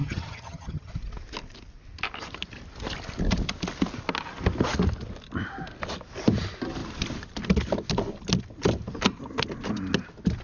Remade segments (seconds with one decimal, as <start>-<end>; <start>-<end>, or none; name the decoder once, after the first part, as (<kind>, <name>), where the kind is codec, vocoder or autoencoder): 0.0-0.9 (vocoder, HiFi-GAN)